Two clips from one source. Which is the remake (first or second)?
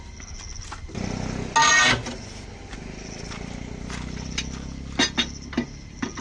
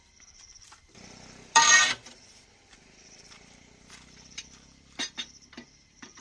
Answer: second